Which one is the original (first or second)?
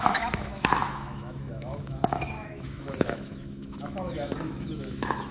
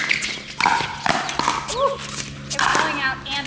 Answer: second